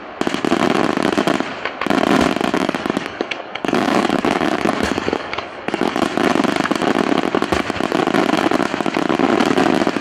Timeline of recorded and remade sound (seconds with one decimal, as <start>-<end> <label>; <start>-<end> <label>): 0.0-2.5 recorded; 2.5-6.0 remade; 6.0-10.0 recorded